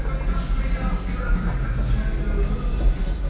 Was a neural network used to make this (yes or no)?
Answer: no